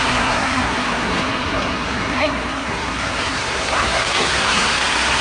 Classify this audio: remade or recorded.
remade